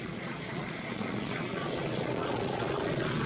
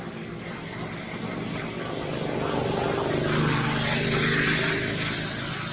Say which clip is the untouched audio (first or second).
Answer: second